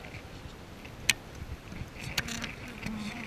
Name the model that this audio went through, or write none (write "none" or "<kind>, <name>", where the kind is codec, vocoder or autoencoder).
none